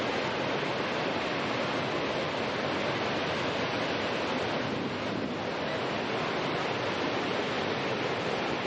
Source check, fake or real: real